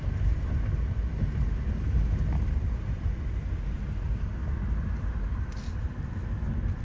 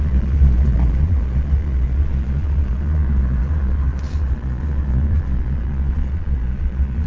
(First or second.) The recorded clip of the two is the first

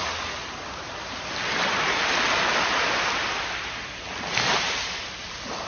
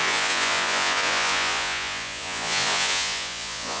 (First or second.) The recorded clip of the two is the first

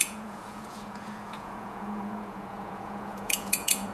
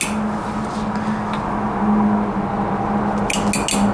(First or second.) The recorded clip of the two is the second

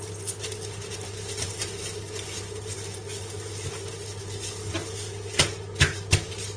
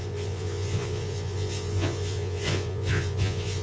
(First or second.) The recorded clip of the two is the first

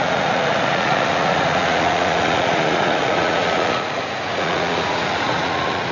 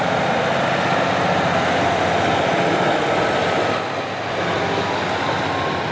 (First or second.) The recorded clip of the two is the second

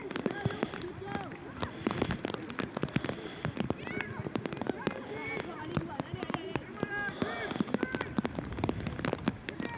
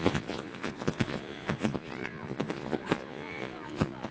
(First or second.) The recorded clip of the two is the first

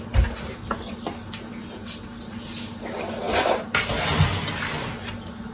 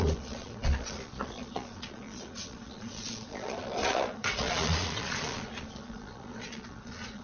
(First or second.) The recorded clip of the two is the first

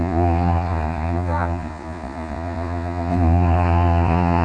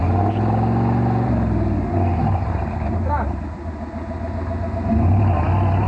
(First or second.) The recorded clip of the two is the second